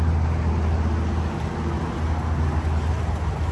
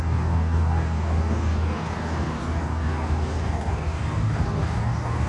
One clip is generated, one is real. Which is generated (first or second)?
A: second